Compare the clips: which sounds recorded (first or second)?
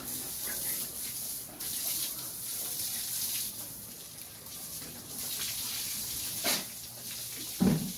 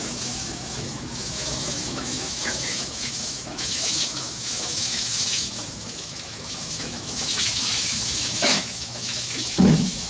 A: first